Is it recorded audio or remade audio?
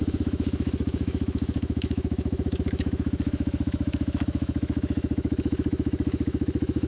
remade